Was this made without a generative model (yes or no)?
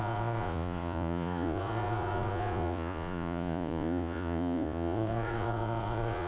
no